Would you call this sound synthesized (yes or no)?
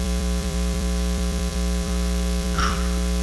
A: yes